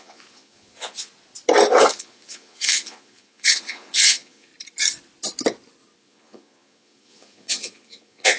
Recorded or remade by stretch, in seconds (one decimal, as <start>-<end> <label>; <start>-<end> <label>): 0.0-1.1 remade; 1.1-1.9 recorded; 1.9-4.5 remade; 4.5-6.0 recorded; 6.0-8.4 remade